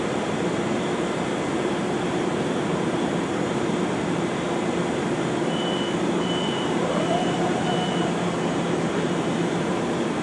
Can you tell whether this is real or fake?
fake